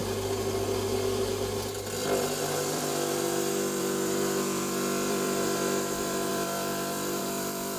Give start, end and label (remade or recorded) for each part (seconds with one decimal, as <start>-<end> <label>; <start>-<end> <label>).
0.0-2.0 recorded; 2.0-7.8 remade